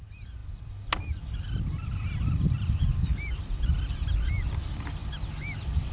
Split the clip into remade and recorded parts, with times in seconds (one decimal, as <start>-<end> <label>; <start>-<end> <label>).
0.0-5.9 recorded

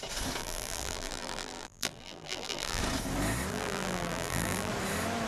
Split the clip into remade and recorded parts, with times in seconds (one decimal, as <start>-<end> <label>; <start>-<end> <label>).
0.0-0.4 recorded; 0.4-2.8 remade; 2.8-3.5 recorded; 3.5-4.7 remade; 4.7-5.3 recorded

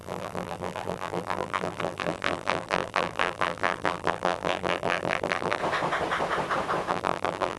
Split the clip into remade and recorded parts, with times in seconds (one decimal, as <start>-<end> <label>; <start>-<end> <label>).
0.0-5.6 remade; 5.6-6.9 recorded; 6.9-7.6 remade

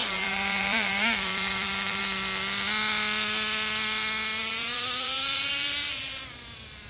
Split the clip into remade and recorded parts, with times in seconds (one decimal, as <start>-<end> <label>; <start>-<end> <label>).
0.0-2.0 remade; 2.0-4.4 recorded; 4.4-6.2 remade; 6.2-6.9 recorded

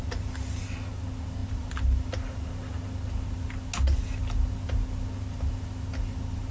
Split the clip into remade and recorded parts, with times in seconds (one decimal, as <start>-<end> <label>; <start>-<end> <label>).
0.0-6.5 recorded